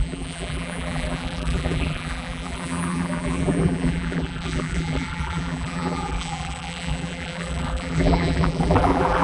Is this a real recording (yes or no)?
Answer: no